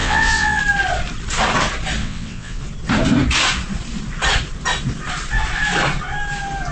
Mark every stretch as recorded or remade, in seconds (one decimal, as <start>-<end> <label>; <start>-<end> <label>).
0.0-0.6 remade; 0.6-2.0 recorded; 2.0-2.6 remade; 2.6-6.7 recorded